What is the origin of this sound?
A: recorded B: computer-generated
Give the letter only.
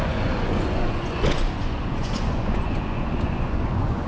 B